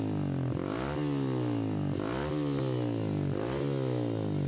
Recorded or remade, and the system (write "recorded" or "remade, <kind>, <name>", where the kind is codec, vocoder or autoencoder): recorded